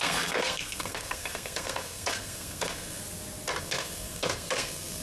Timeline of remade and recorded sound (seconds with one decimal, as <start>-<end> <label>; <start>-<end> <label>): 0.0-3.0 remade; 3.0-3.6 recorded; 3.6-5.0 remade